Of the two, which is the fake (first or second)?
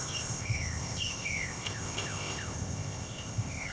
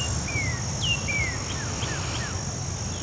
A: first